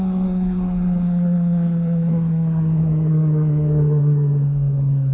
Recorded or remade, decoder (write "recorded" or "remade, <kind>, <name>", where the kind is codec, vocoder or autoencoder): remade, codec, SNAC